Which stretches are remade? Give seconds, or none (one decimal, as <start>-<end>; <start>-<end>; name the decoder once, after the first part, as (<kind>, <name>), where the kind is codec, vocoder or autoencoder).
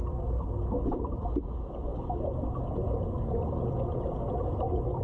none